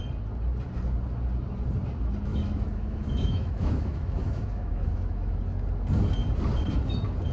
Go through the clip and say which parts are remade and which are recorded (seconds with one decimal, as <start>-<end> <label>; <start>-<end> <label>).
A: 0.0-2.3 recorded; 2.3-5.4 remade; 5.4-7.3 recorded